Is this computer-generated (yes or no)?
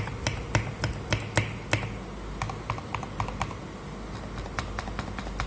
no